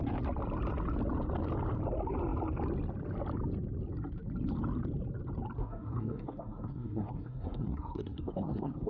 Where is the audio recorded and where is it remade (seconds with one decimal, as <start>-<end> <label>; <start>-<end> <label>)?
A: 0.0-5.6 recorded; 5.6-8.9 remade